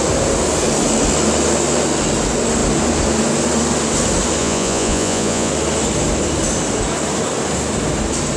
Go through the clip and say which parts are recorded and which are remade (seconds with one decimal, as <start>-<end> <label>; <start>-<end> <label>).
0.0-4.4 recorded; 4.4-5.5 remade; 5.5-8.4 recorded